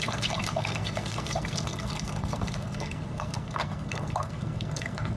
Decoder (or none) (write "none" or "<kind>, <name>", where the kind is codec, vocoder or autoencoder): codec, SNAC